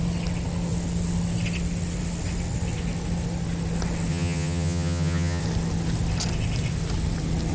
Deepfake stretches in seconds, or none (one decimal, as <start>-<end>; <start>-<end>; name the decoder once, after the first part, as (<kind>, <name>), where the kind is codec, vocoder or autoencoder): 4.1-5.4 (vocoder, HiFi-GAN)

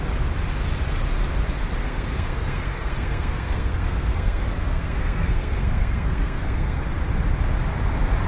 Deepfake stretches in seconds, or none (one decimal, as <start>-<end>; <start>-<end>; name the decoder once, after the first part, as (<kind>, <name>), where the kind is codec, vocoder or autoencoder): 1.8-6.8 (codec, SNAC)

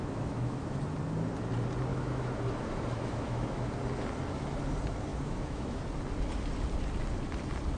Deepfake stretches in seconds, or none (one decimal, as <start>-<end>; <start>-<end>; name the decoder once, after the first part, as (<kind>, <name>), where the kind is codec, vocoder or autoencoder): 0.0-0.8 (autoencoder, DAC-VAE); 1.9-3.7; 5.1-5.8

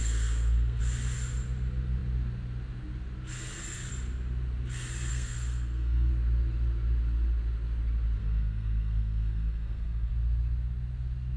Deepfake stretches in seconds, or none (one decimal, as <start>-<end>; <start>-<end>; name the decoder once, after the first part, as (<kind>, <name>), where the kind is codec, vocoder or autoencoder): 0.0-0.8 (codec, SNAC); 5.1-6.1; 8.2-10.1

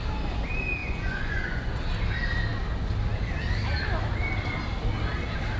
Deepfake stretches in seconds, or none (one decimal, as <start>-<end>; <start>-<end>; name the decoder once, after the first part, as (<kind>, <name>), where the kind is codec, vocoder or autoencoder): 0.8-1.7 (vocoder, Vocos)

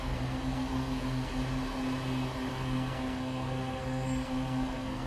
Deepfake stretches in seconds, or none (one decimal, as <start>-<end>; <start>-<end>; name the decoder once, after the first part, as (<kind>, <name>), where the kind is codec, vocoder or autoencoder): 0.0-1.3 (codec, SNAC); 2.5-5.1

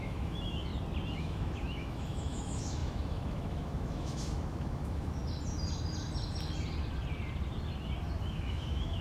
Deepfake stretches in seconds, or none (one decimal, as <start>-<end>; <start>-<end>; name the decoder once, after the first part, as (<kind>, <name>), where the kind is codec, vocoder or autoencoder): 0.0-0.7 (autoencoder, DAC-VAE); 1.2-5.2; 8.2-9.0